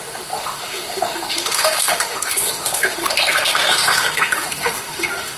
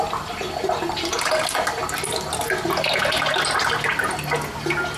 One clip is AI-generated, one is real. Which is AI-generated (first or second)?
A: first